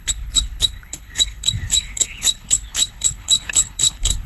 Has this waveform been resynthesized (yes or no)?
yes